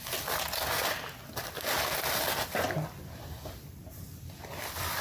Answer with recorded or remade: recorded